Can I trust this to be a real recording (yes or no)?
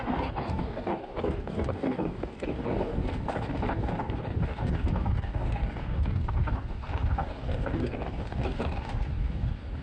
no